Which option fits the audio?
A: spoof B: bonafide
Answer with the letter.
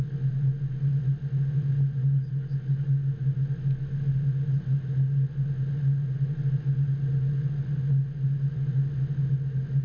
B